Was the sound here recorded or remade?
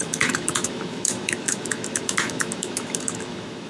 remade